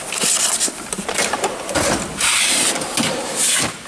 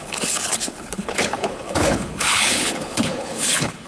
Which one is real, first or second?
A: first